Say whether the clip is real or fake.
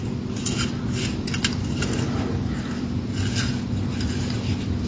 real